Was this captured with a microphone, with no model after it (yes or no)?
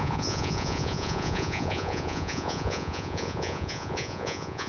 no